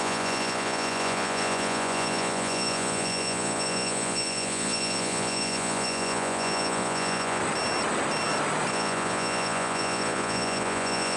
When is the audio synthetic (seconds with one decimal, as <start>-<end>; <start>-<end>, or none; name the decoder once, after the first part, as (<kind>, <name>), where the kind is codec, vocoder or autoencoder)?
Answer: 0.0-7.4 (vocoder, Vocos); 8.7-11.2